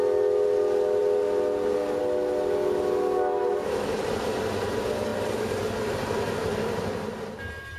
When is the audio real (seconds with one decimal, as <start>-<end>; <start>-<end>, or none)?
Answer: 0.0-7.8